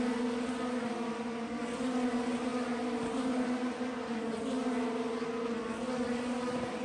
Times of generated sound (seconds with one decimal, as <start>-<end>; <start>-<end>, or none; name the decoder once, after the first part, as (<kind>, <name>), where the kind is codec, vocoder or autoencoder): none